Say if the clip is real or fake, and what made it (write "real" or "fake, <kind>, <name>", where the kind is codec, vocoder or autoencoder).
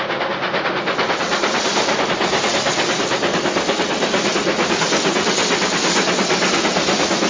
real